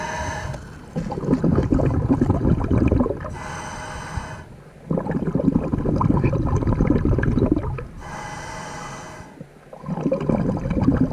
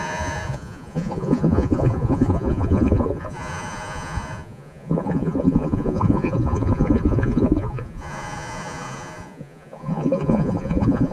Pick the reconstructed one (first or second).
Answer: second